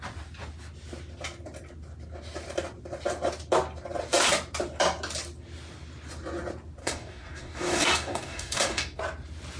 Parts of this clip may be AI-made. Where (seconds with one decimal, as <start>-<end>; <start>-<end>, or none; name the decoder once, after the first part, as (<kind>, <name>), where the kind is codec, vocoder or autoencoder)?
6.8-9.0 (codec, DAC)